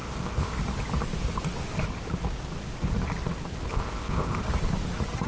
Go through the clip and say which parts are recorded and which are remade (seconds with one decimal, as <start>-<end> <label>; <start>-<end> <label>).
0.0-0.6 remade; 0.6-3.7 recorded; 3.7-4.4 remade; 4.4-5.3 recorded